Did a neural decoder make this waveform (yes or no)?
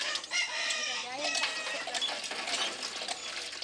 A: no